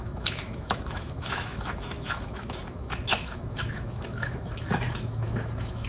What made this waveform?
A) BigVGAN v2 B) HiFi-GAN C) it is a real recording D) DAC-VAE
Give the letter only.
D